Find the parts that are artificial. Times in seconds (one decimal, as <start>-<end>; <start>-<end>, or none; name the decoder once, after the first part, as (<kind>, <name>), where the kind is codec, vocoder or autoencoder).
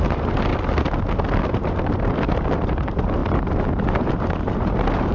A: 0.0-0.5 (vocoder, BigVGAN v2); 1.5-5.1